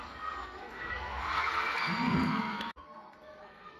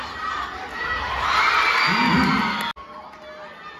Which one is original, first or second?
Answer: second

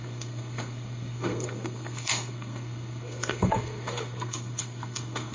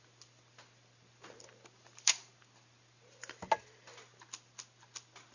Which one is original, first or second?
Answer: second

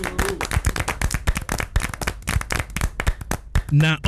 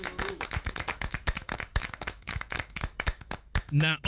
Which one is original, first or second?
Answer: first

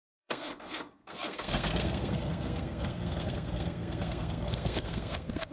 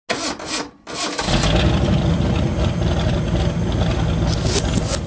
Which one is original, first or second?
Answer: second